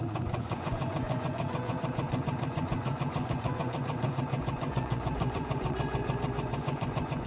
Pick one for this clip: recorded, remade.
remade